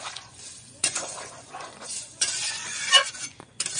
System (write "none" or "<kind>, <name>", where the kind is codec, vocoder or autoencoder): vocoder, Vocos